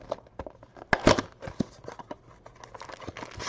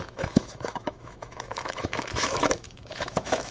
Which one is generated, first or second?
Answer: second